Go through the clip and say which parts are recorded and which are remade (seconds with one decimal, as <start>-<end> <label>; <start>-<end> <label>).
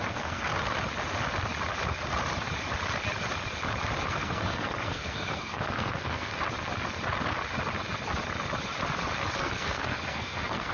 0.0-0.5 remade; 0.5-4.1 recorded; 4.1-6.3 remade; 6.3-9.4 recorded; 9.4-10.7 remade